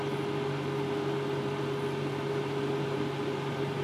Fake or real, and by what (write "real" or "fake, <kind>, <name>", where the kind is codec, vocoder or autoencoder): real